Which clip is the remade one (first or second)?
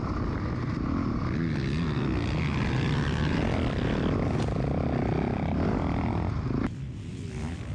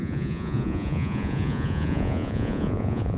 second